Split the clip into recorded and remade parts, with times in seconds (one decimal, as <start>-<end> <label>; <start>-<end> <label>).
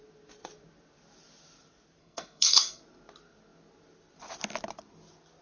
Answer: 0.0-2.0 recorded; 2.0-2.8 remade; 2.8-5.4 recorded